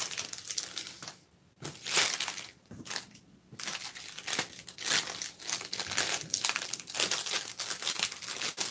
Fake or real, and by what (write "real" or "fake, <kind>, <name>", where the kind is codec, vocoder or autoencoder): real